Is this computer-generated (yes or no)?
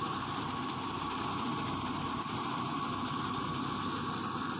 no